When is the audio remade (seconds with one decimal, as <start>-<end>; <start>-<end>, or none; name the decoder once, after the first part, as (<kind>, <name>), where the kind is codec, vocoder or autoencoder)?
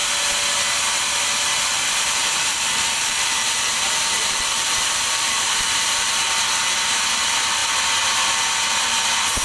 1.7-6.4 (vocoder, BigVGAN v2)